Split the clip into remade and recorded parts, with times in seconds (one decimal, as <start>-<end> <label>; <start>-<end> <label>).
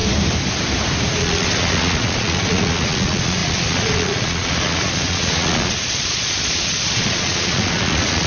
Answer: 0.0-1.2 recorded; 1.2-8.3 remade